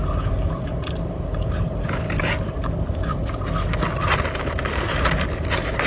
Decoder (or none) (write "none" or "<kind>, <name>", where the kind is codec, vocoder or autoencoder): none